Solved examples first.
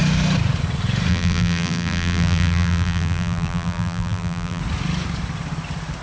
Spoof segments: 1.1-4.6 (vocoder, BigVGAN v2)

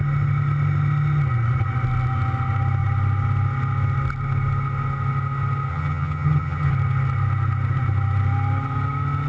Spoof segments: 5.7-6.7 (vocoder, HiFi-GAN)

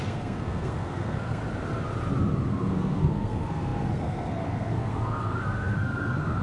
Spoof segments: 0.0-1.4 (codec, SNAC); 2.5-6.4

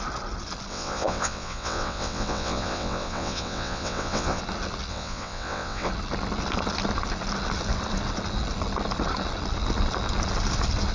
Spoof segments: 0.7-4.4 (vocoder, WaveNeXt); 4.9-5.9

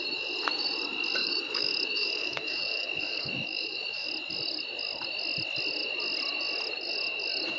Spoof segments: 1.2-4.1 (autoencoder, DAC-VAE)